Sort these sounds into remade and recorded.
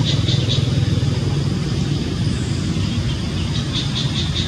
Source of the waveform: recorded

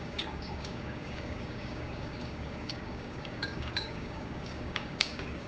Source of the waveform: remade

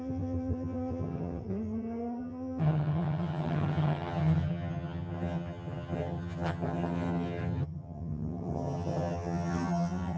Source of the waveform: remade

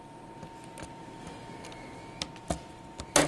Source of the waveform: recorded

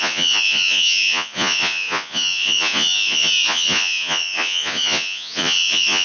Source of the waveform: remade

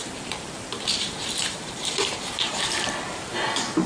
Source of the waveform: remade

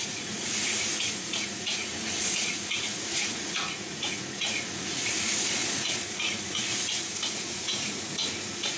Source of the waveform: remade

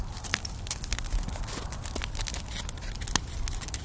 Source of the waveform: recorded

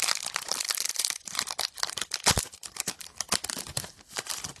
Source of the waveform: remade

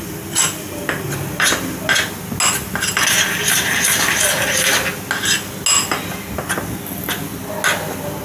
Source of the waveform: recorded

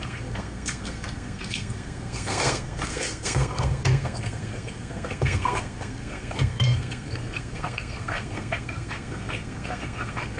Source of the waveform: remade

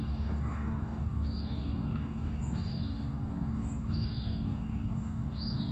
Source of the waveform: remade